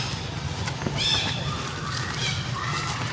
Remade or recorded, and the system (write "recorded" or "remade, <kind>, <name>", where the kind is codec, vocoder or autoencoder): recorded